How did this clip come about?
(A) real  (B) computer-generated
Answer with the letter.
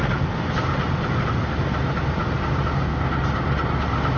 A